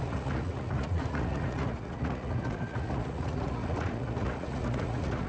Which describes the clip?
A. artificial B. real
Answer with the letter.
A